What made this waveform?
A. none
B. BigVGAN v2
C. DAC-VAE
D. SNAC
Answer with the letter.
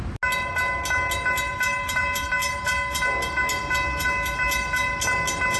A